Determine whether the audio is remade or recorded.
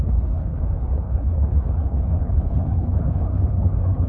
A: remade